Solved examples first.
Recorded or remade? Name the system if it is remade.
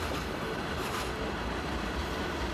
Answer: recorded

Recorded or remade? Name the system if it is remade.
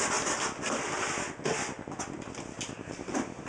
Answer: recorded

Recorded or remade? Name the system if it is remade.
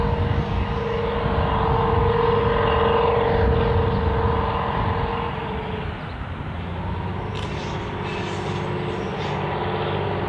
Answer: recorded